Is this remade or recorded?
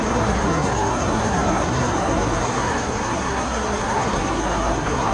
remade